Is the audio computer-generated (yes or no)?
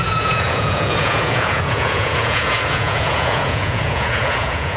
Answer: yes